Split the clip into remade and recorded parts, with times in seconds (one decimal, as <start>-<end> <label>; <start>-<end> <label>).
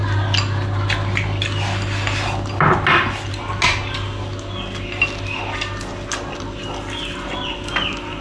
0.0-8.2 recorded